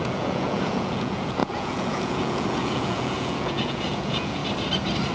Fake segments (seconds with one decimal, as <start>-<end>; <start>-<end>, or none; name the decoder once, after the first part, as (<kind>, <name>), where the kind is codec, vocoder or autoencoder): 0.0-4.4 (vocoder, Vocos)